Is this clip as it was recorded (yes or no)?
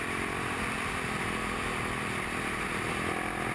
no